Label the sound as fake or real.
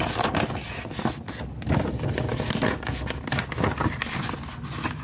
real